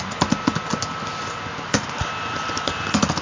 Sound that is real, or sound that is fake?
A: real